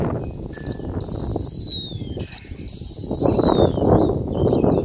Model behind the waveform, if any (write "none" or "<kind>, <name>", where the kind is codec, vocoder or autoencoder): none